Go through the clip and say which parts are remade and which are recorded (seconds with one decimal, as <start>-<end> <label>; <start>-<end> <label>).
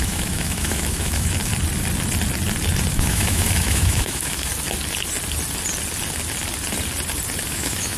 0.0-1.5 remade; 1.5-2.9 recorded; 2.9-4.5 remade; 4.5-7.5 recorded; 7.5-8.0 remade